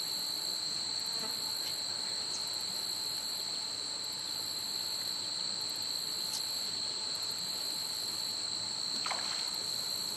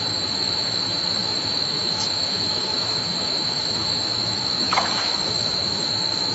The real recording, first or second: first